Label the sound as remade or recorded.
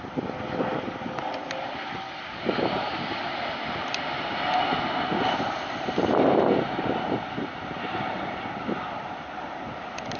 recorded